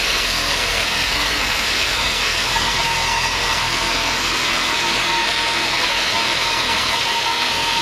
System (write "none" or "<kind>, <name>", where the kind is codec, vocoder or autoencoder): codec, SNAC